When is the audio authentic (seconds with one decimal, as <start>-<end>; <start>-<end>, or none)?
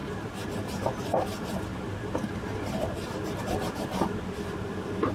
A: 0.0-5.1